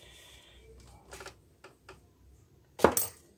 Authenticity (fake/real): real